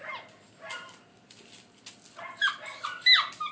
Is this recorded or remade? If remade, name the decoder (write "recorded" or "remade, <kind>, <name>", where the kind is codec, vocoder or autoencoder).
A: recorded